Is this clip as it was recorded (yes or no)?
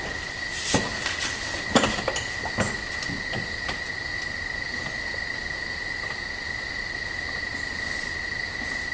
yes